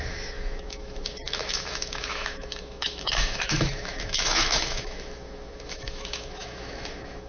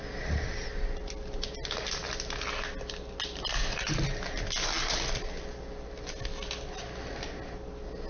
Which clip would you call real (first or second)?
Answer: second